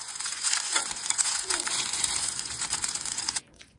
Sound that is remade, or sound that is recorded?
remade